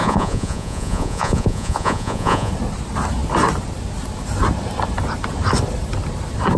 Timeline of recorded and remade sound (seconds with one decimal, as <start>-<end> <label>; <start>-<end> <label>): 0.0-2.5 remade; 2.5-6.6 recorded